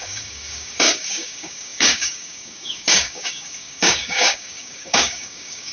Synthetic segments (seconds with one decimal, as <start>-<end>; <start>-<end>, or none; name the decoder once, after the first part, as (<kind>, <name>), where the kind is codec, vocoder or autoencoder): 0.0-5.7 (codec, DAC)